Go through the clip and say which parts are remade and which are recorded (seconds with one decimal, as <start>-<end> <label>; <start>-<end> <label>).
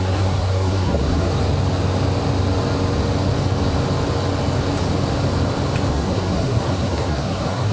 0.0-1.3 remade; 1.3-5.9 recorded; 5.9-7.7 remade